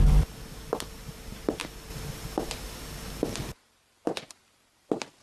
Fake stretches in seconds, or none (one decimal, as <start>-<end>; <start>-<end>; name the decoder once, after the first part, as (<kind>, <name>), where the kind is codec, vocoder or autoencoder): none